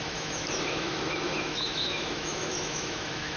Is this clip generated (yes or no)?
yes